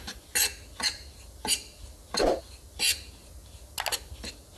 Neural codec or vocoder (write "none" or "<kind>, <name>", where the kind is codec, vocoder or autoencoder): none